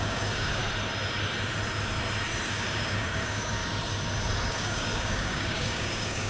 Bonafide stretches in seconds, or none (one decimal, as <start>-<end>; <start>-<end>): 0.6-2.5; 3.6-4.5